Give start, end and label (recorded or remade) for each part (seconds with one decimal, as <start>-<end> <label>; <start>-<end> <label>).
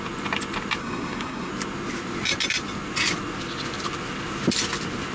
0.0-0.8 recorded; 0.8-1.5 remade; 1.5-5.1 recorded